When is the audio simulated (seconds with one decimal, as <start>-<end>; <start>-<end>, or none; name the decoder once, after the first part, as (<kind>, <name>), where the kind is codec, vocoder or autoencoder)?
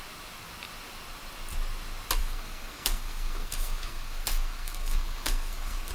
2.2-5.9 (codec, SNAC)